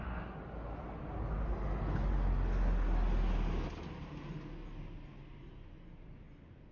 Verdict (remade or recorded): recorded